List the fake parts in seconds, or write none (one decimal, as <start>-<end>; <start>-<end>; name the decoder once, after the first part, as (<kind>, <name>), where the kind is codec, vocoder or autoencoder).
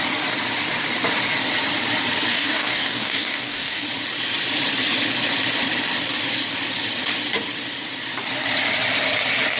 2.3-3.8 (codec, DAC)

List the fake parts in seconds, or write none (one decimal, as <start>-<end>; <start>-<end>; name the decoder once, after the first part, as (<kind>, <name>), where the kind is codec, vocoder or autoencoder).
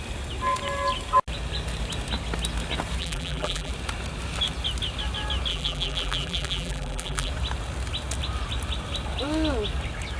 3.0-3.7 (vocoder, BigVGAN v2); 5.5-7.3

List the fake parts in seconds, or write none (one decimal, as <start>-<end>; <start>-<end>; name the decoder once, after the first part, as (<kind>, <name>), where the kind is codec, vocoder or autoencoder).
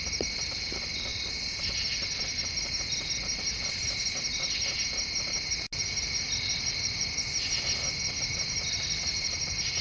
none